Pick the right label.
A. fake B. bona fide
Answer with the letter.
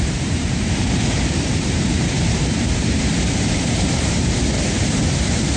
A